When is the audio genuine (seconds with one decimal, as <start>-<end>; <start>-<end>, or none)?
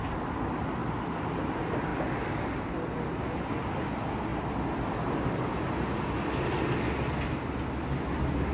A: 0.0-8.5